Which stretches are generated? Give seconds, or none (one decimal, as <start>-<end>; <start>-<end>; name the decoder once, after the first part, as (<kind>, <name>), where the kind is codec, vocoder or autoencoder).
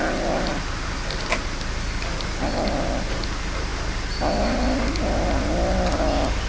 none